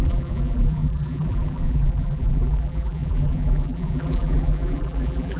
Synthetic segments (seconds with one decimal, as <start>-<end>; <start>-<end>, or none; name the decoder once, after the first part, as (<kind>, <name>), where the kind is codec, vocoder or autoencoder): 0.0-5.4 (vocoder, BigVGAN v2)